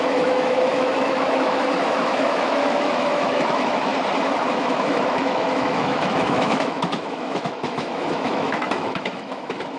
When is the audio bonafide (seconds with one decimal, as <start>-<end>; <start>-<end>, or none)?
3.9-4.5

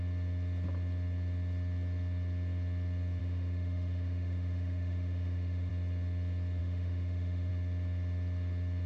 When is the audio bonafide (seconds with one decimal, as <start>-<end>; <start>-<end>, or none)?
0.0-3.2; 5.7-6.6; 7.5-8.9

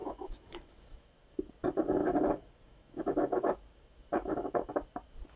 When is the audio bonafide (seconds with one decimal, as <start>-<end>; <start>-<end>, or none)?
1.5-2.0; 4.7-5.4

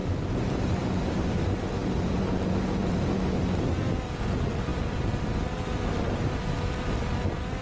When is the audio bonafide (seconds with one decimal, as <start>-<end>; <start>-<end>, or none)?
0.0-7.6

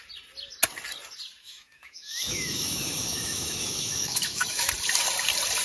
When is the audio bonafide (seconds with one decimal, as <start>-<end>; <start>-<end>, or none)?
0.0-1.4; 4.7-5.6